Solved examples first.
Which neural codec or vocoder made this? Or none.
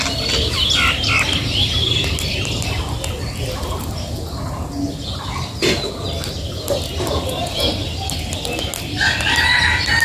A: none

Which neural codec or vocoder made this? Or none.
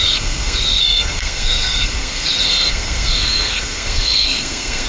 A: codec, SNAC